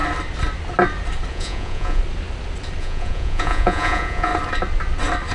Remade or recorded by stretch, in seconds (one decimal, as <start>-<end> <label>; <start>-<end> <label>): 0.0-1.3 recorded; 1.3-2.0 remade; 2.0-2.8 recorded; 2.8-4.3 remade; 4.3-5.3 recorded